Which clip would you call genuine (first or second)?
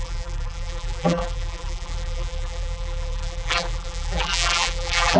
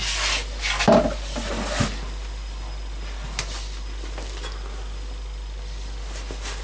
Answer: second